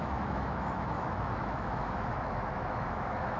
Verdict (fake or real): fake